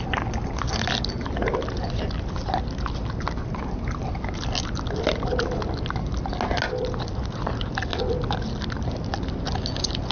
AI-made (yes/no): no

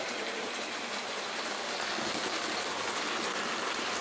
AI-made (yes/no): no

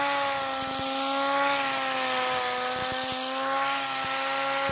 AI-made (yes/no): no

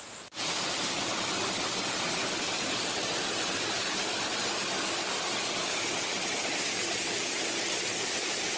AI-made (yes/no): no